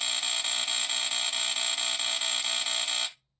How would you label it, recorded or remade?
recorded